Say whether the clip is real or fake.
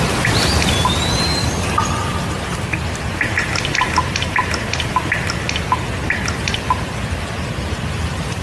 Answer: real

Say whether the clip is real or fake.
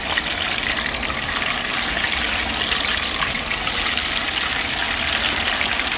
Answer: real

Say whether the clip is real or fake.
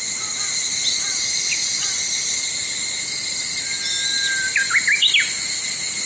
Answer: real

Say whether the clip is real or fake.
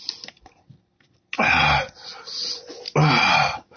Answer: real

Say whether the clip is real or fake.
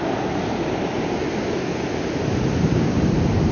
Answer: real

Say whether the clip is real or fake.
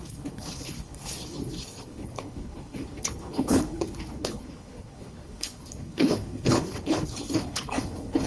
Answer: fake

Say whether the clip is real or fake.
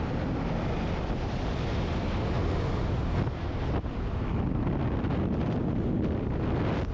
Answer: real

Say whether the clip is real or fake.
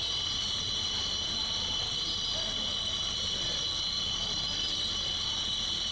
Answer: real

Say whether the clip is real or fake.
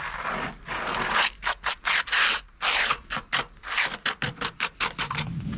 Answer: real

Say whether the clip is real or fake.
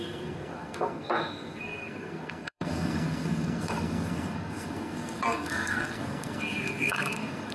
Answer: fake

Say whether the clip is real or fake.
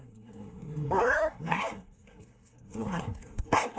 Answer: fake